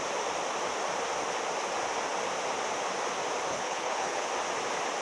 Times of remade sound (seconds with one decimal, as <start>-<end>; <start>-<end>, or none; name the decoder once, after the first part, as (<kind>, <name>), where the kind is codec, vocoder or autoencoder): 3.5-4.3 (codec, HILCodec)